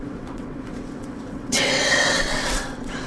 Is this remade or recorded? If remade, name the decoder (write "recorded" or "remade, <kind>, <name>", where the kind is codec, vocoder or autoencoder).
remade, vocoder, WaveNeXt